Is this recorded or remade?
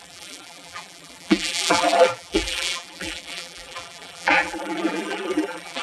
remade